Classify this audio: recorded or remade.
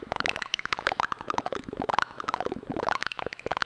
remade